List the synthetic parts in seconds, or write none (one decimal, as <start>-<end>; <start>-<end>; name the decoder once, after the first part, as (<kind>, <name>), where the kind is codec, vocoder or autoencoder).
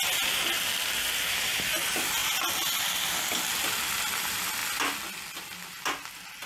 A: none